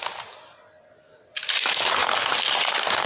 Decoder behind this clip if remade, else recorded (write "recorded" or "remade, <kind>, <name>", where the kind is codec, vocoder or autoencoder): recorded